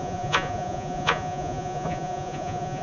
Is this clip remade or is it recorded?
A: remade